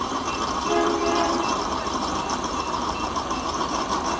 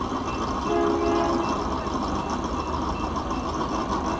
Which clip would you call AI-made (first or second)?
first